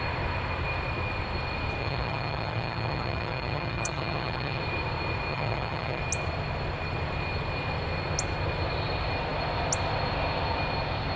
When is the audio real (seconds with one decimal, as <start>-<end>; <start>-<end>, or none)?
0.0-1.8; 4.6-5.3; 6.0-11.2